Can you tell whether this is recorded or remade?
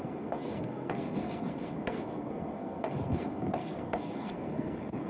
remade